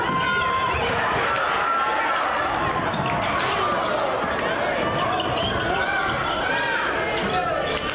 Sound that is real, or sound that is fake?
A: real